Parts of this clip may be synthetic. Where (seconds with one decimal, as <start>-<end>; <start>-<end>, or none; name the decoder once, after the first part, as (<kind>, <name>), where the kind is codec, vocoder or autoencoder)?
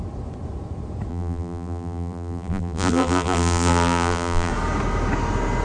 1.1-4.5 (vocoder, BigVGAN v2)